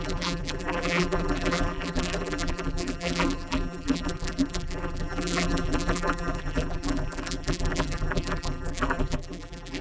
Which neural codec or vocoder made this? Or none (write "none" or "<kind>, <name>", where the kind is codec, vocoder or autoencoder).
vocoder, BigVGAN v2